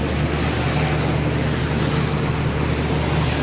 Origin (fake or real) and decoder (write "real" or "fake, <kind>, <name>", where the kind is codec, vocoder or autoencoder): real